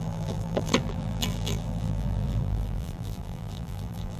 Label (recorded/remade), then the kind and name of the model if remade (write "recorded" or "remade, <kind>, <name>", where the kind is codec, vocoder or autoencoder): remade, vocoder, BigVGAN v2